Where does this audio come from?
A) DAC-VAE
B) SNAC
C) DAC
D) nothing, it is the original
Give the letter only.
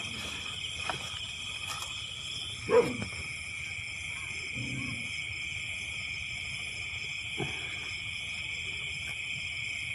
D